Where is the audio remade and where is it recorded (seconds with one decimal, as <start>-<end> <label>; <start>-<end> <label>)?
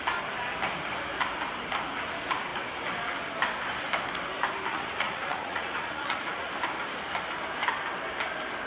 0.0-4.7 recorded; 4.7-6.5 remade; 6.5-8.7 recorded